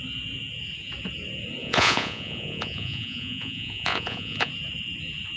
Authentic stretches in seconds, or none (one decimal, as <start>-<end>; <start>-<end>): 0.0-1.6; 4.5-5.4

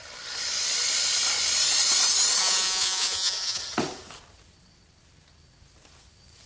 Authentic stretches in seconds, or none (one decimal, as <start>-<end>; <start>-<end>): 0.0-2.4; 3.6-6.5

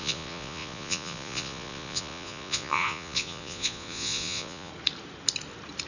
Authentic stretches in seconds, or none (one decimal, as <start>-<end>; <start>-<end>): 4.7-5.9

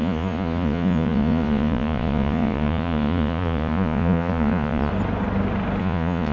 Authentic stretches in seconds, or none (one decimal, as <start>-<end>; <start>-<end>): 4.9-5.8

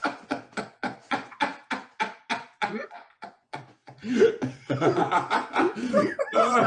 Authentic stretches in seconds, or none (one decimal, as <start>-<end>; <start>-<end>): 1.5-2.3